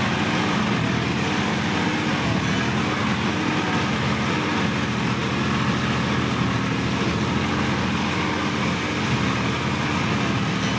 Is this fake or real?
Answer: real